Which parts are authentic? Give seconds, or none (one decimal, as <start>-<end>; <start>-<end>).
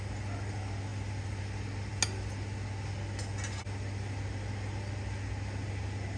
0.0-6.2